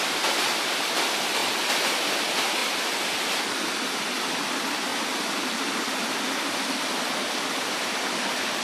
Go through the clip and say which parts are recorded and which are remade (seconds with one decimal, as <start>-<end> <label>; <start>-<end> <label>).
0.0-8.6 recorded